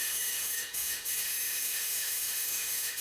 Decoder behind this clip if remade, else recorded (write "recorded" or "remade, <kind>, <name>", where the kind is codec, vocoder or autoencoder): remade, autoencoder, DAC-VAE